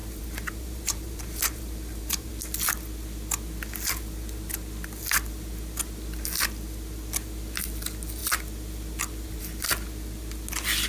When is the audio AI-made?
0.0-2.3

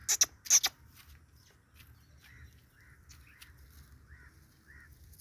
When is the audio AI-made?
none